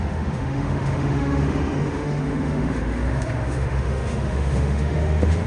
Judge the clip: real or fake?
fake